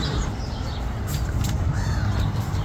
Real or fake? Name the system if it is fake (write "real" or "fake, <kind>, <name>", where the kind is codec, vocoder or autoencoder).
fake, vocoder, BigVGAN v2